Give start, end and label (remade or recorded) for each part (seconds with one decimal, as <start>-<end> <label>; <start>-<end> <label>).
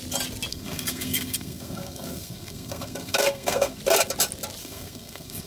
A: 0.0-0.5 recorded; 0.5-3.8 remade; 3.8-4.6 recorded; 4.6-5.5 remade